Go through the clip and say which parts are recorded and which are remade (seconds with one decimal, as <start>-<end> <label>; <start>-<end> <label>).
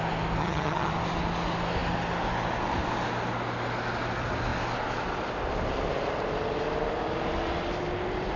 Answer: 0.0-0.4 recorded; 0.4-0.9 remade; 0.9-8.4 recorded